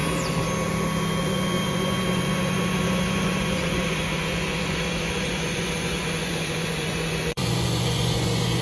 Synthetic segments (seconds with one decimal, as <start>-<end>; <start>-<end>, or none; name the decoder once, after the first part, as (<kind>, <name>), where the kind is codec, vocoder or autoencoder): 1.2-8.6 (vocoder, Vocos)

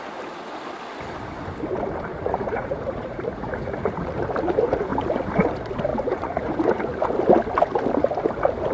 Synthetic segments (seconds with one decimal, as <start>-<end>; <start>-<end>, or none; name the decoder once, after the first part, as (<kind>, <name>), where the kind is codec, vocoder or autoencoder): 2.1-3.9 (vocoder, Vocos); 5.9-6.5

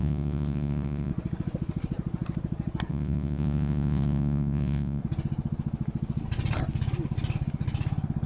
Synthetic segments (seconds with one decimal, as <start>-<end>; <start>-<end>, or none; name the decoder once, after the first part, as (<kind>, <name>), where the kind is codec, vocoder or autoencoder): 0.0-1.1 (vocoder, Vocos); 2.9-5.0

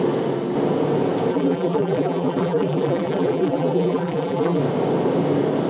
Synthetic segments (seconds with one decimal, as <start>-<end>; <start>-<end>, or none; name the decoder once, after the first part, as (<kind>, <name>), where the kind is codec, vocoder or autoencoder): 1.3-4.6 (vocoder, BigVGAN v2)

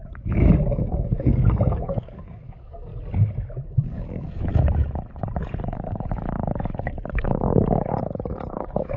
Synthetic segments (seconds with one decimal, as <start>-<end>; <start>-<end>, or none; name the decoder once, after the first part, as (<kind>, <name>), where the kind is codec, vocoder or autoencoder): 0.0-2.9 (codec, DAC); 3.8-4.5; 5.6-9.0